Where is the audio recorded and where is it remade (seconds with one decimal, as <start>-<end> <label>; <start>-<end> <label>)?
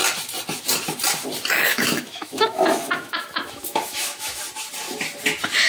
0.0-1.7 recorded; 1.7-4.4 remade; 4.4-5.7 recorded